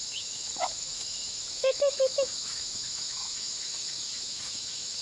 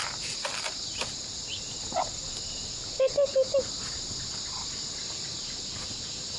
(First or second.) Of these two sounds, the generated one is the first